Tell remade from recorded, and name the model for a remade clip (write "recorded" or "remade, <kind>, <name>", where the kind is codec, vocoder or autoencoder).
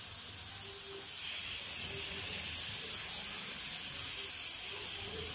recorded